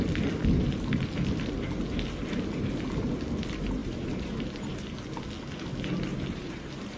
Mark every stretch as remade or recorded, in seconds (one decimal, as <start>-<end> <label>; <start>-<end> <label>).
0.0-3.8 recorded; 3.8-4.6 remade; 4.6-6.1 recorded; 6.1-7.0 remade